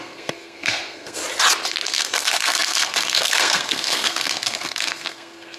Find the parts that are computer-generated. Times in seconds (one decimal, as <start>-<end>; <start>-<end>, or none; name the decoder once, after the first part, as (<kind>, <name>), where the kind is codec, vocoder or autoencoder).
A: 0.0-1.2 (codec, SNAC); 1.9-5.6